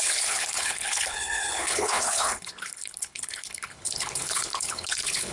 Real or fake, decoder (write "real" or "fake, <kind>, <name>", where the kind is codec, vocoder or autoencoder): fake, codec, HILCodec